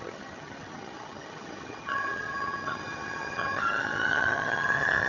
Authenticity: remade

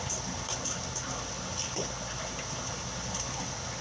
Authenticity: recorded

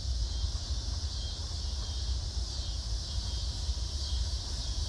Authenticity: recorded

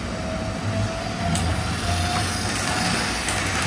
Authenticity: recorded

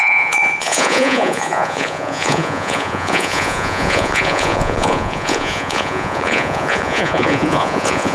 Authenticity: remade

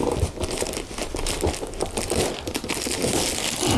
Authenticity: recorded